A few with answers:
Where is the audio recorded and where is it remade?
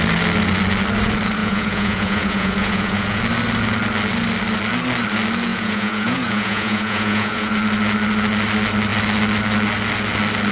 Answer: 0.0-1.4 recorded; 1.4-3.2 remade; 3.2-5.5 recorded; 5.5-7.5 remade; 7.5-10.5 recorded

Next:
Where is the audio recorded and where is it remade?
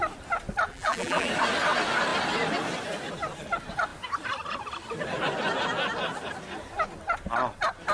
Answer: 0.0-0.7 recorded; 0.7-1.3 remade; 1.3-7.9 recorded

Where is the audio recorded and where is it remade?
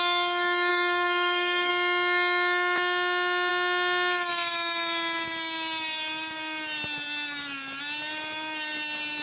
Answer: 0.0-0.7 recorded; 0.7-1.7 remade; 1.7-9.2 recorded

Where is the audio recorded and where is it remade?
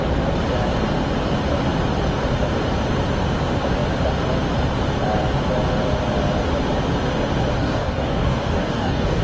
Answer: 0.0-7.6 recorded; 7.6-9.2 remade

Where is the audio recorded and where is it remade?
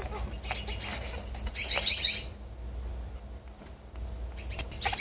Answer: 0.0-5.0 recorded